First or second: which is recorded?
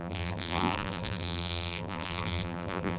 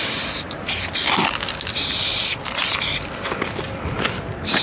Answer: second